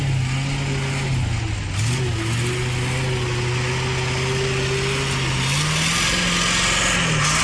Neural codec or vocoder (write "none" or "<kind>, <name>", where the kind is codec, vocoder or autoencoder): none